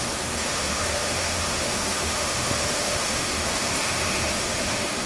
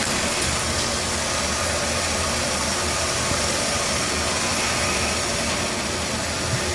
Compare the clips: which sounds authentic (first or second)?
second